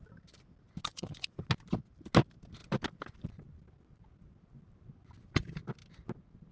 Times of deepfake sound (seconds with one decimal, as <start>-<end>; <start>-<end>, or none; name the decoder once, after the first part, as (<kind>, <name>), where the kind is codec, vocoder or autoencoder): 0.9-1.4 (vocoder, Vocos)

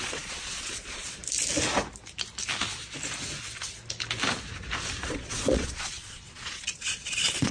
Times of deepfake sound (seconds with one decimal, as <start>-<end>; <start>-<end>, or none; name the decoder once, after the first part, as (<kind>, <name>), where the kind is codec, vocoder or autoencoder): 0.0-1.2 (vocoder, Vocos); 5.0-7.5

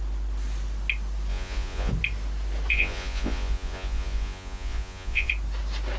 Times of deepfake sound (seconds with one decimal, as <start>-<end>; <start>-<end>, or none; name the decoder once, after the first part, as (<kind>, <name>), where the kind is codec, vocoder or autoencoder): 1.3-1.9 (vocoder, Vocos); 2.7-5.3

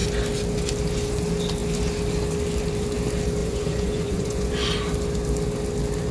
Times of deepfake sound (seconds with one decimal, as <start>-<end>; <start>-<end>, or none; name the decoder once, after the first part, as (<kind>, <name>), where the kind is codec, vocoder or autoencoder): 3.4-4.5 (vocoder, Vocos)

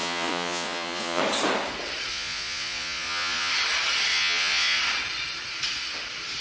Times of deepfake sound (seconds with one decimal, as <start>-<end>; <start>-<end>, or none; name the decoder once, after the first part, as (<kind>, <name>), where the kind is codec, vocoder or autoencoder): 0.0-1.2 (vocoder, Vocos); 2.1-3.5; 4.1-4.8

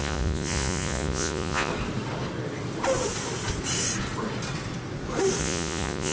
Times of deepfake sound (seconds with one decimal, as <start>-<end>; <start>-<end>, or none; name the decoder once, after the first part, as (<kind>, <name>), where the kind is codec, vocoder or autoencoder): 0.0-1.7 (vocoder, Vocos); 5.4-6.1

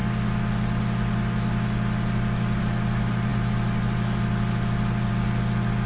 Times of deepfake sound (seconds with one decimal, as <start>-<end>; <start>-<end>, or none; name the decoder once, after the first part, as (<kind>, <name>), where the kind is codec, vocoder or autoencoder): none

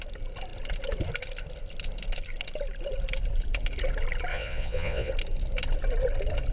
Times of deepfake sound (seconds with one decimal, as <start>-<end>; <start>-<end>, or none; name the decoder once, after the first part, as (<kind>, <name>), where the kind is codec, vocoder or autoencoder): 4.3-5.1 (vocoder, Vocos)